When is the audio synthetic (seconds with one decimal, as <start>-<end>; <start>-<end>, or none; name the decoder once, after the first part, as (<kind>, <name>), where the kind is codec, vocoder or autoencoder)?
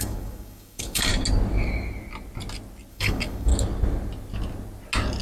0.0-1.1 (codec, DAC); 2.9-3.5